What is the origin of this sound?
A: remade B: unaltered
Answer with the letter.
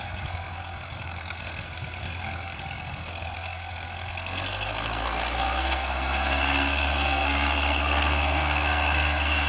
A